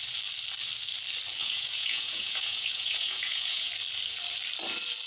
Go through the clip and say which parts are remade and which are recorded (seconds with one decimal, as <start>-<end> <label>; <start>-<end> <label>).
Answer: 0.0-1.4 recorded; 1.4-3.7 remade; 3.7-5.1 recorded